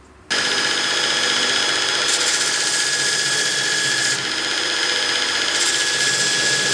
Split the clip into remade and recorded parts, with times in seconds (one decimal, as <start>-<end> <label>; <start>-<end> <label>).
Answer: 0.0-6.7 recorded